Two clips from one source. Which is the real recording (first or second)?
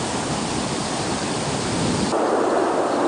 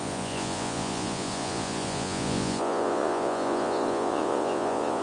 first